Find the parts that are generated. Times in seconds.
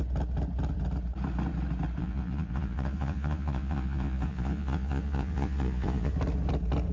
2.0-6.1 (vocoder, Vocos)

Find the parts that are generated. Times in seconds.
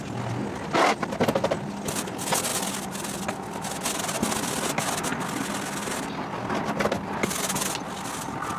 none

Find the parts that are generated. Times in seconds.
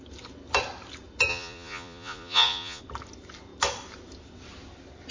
1.3-2.8 (vocoder, Vocos)